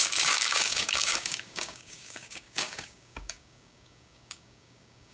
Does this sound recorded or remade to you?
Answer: remade